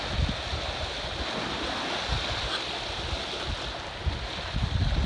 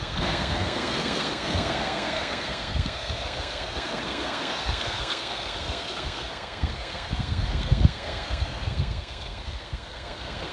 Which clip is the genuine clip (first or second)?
first